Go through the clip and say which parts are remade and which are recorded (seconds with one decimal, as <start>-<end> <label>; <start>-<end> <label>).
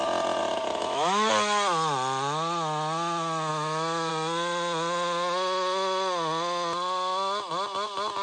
0.0-0.8 recorded; 0.8-1.3 remade; 1.3-3.5 recorded; 3.5-4.1 remade; 4.1-8.2 recorded